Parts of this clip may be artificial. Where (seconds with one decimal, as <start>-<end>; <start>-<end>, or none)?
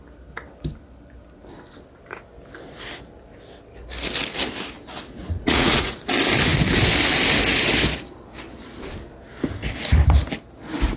5.2-6.1